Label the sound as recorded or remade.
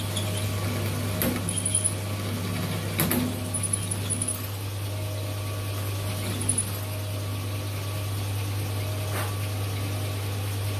recorded